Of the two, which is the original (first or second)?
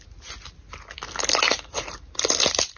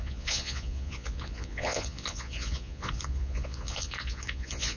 first